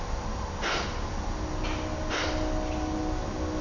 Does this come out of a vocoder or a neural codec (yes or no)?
no